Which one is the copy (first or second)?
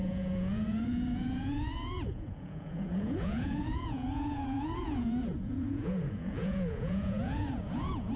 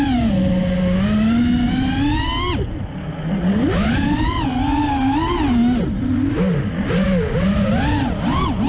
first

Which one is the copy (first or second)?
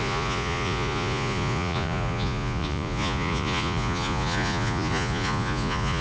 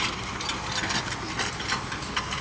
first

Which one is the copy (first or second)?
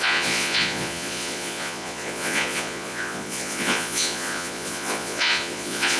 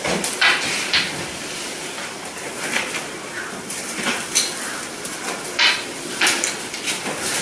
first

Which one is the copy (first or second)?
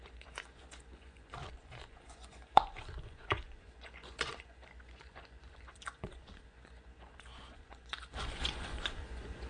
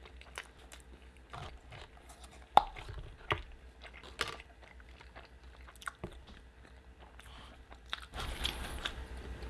first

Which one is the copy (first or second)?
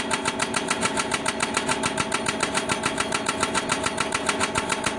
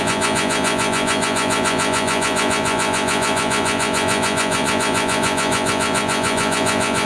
second